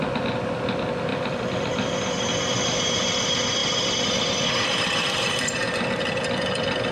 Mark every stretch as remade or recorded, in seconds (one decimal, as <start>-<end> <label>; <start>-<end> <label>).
0.0-1.1 recorded; 1.1-1.9 remade; 1.9-3.6 recorded; 3.6-6.5 remade; 6.5-6.9 recorded